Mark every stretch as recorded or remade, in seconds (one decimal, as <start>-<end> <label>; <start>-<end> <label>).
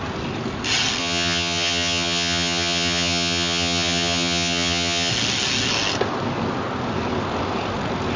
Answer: 0.0-1.0 recorded; 1.0-5.1 remade; 5.1-8.2 recorded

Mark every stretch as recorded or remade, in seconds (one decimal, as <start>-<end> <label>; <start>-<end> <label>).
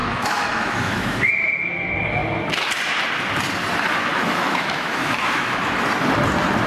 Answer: 0.0-1.3 remade; 1.3-4.1 recorded; 4.1-5.7 remade; 5.7-6.7 recorded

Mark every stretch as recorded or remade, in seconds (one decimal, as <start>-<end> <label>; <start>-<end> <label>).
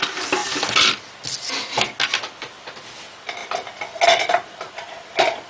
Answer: 0.0-5.5 recorded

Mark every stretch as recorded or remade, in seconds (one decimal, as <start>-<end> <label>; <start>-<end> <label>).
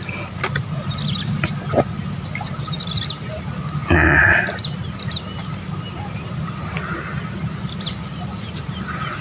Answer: 0.0-9.2 recorded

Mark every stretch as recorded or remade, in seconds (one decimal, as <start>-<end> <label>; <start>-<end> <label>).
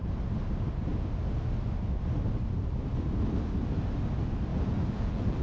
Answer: 0.0-4.5 recorded; 4.5-5.4 remade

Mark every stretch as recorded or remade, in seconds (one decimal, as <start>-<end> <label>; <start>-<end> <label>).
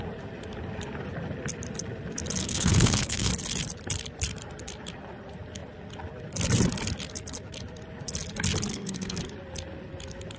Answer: 0.0-2.4 recorded; 2.4-3.3 remade; 3.3-8.7 recorded; 8.7-9.2 remade; 9.2-10.4 recorded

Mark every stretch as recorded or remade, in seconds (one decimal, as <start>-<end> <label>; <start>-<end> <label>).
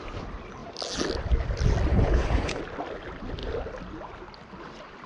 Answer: 0.0-1.9 recorded; 1.9-2.6 remade; 2.6-5.1 recorded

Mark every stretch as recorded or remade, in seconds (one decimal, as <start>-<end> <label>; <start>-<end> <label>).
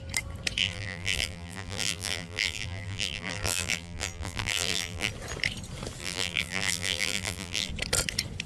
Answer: 0.0-0.6 recorded; 0.6-5.1 remade; 5.1-6.0 recorded; 6.0-7.7 remade; 7.7-8.5 recorded